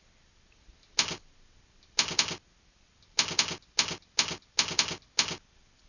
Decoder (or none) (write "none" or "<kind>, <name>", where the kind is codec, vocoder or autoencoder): none